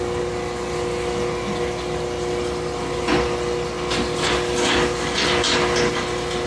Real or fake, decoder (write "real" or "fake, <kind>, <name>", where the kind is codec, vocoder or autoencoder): real